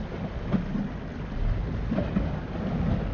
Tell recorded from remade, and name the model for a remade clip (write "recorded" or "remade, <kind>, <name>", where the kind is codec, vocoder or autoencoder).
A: recorded